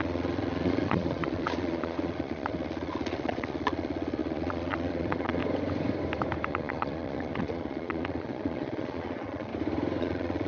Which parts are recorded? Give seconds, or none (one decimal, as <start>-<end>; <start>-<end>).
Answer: 5.4-6.5; 9.5-10.0